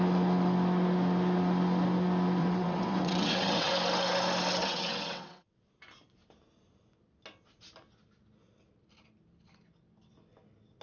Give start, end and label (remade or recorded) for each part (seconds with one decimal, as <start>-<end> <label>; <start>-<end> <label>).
0.0-2.4 recorded; 2.4-3.7 remade; 3.7-4.6 recorded; 4.6-5.7 remade; 5.7-10.8 recorded